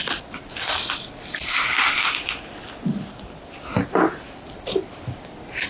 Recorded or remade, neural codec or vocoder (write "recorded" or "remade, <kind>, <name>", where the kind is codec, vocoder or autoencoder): recorded